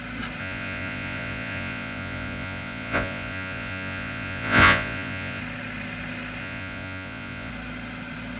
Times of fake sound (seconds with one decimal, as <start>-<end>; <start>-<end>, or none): 0.4-5.4; 6.4-7.5